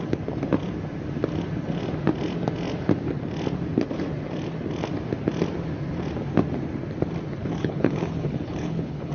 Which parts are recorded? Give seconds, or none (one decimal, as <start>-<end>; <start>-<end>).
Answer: 0.0-7.4